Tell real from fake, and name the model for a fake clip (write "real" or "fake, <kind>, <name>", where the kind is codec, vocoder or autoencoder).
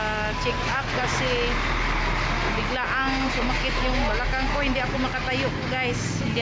real